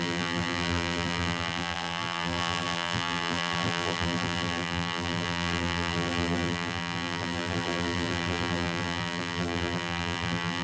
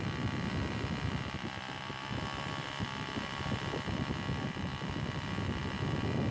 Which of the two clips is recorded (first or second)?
second